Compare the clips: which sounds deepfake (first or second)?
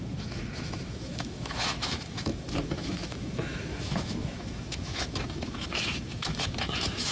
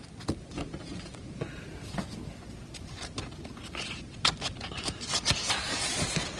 first